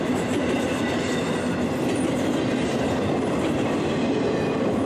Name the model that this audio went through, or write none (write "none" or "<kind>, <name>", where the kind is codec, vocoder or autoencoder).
vocoder, BigVGAN v2